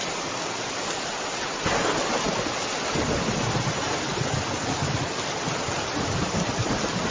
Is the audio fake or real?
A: real